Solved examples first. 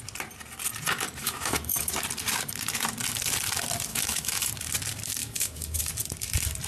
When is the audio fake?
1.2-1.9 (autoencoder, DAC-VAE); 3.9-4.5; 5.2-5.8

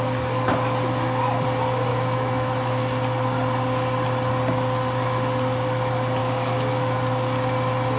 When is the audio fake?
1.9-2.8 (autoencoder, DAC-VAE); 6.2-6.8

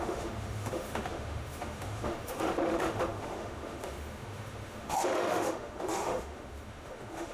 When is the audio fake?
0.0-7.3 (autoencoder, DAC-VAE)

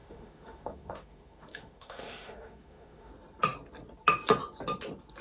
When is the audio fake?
0.0-3.1 (autoencoder, DAC-VAE)

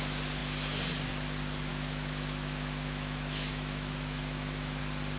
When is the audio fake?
1.7-4.8 (autoencoder, DAC-VAE)

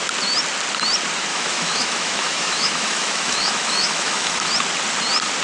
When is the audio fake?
1.3-4.5 (autoencoder, DAC-VAE)

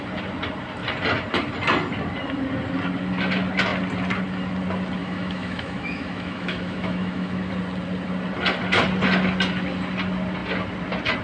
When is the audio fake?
5.0-7.5 (autoencoder, DAC-VAE)

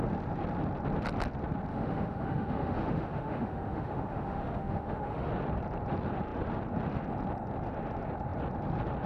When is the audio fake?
1.7-5.3 (autoencoder, DAC-VAE)